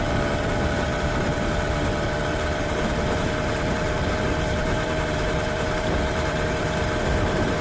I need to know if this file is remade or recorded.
remade